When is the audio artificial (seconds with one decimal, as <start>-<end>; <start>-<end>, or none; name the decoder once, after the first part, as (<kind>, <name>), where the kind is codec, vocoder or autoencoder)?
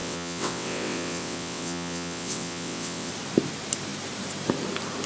0.0-3.1 (vocoder, WaveNeXt)